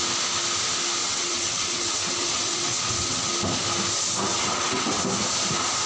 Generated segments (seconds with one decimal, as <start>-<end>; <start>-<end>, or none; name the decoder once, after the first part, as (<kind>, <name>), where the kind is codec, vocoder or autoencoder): 1.0-3.3 (vocoder, WaveNeXt); 4.3-5.0